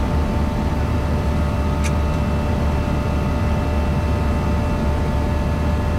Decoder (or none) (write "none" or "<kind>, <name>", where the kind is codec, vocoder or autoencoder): none